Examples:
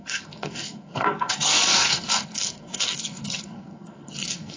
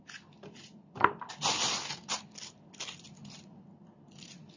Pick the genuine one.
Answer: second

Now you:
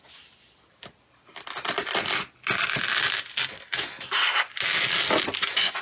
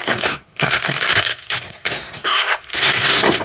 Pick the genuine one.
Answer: first